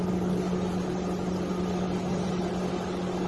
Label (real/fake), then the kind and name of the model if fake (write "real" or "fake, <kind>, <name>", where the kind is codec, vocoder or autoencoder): real